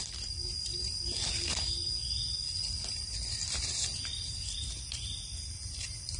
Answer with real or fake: fake